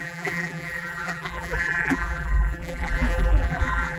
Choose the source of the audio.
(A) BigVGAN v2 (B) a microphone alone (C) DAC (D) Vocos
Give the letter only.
A